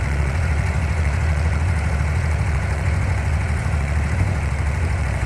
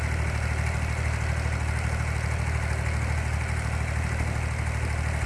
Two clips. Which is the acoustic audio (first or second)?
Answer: second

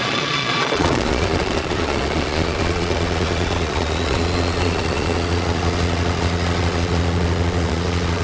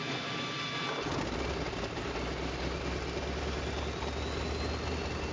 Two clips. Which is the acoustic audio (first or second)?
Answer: second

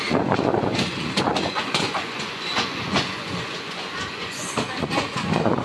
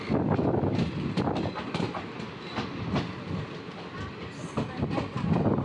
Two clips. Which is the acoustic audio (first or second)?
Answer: second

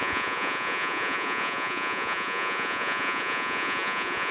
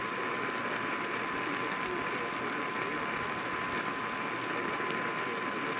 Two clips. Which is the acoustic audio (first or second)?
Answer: second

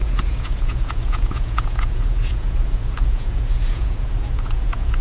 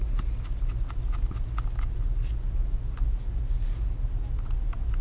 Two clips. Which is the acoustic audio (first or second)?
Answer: second